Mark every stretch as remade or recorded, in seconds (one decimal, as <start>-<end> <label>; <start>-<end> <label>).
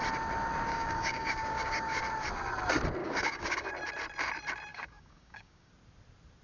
0.0-0.7 recorded; 0.7-2.0 remade; 2.0-3.0 recorded; 3.0-3.7 remade; 3.7-4.7 recorded; 4.7-5.7 remade; 5.7-6.4 recorded